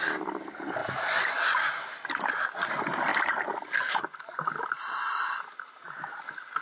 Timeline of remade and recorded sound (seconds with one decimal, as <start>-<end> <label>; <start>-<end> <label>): 0.0-6.6 recorded